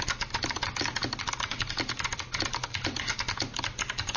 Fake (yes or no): no